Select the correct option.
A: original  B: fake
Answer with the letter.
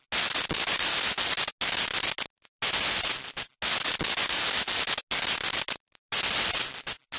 A